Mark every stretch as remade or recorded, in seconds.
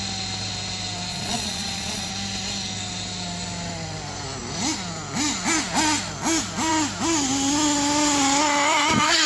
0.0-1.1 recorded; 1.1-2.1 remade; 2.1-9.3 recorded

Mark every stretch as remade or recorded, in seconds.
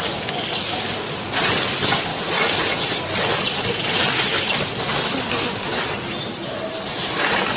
0.0-2.1 recorded; 2.1-3.0 remade; 3.0-7.6 recorded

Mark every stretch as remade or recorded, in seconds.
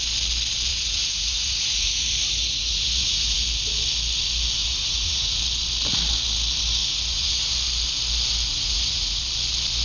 0.0-0.7 recorded; 0.7-3.3 remade; 3.3-4.6 recorded; 4.6-5.4 remade; 5.4-6.8 recorded; 6.8-7.5 remade; 7.5-8.5 recorded; 8.5-9.2 remade; 9.2-9.8 recorded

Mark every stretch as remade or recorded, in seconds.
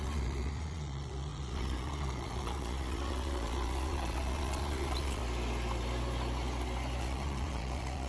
0.0-5.2 remade; 5.2-7.0 recorded; 7.0-8.1 remade